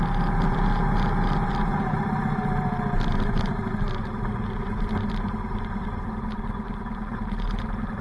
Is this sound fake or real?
real